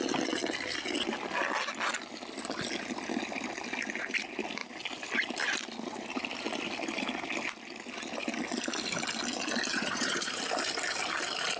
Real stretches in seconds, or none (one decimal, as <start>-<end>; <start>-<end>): 0.0-9.7; 10.4-11.6